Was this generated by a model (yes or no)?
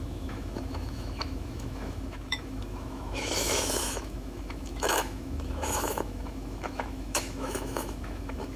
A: yes